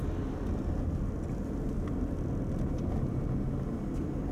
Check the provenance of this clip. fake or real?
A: real